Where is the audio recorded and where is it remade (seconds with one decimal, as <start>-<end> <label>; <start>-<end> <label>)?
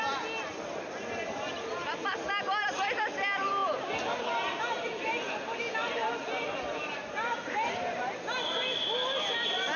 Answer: 0.0-3.6 recorded; 3.6-8.6 remade; 8.6-9.8 recorded